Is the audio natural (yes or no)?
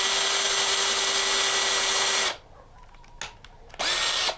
yes